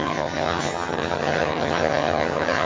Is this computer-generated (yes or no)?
yes